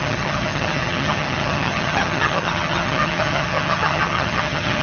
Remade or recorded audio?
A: remade